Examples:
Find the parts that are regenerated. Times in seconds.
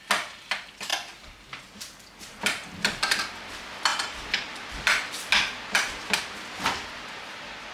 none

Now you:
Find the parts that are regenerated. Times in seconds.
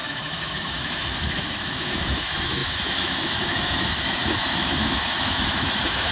0.0-6.1 (autoencoder, DAC-VAE)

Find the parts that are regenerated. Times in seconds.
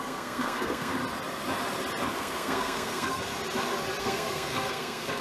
0.0-1.0 (codec, SNAC); 2.1-3.3; 4.0-5.2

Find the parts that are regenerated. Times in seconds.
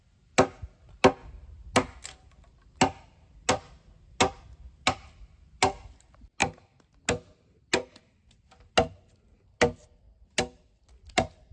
none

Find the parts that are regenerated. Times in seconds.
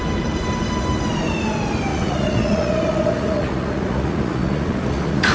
1.9-5.3 (vocoder, Vocos)